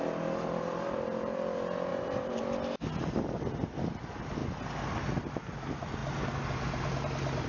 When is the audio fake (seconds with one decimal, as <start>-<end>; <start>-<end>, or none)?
1.9-2.4